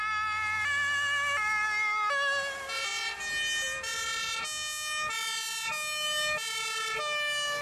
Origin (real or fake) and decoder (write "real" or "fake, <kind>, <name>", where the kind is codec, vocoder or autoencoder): real